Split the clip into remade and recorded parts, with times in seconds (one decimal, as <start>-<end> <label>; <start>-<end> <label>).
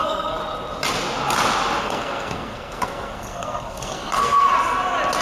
0.0-0.4 remade; 0.4-1.8 recorded; 1.8-4.5 remade; 4.5-5.2 recorded